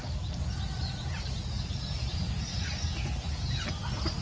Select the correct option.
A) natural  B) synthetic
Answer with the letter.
A